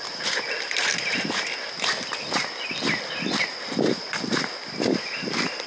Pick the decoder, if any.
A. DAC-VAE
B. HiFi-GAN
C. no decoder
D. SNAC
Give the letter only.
C